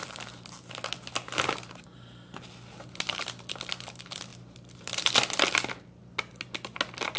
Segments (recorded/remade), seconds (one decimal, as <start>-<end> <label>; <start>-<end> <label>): 0.0-4.3 recorded; 4.3-5.1 remade; 5.1-7.2 recorded